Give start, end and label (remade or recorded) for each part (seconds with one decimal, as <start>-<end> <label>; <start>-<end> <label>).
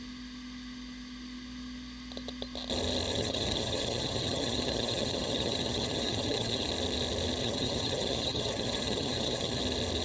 0.0-3.1 recorded; 3.1-6.7 remade; 6.7-7.4 recorded; 7.4-9.6 remade; 9.6-10.0 recorded